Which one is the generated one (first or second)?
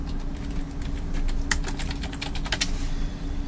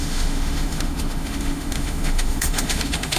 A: second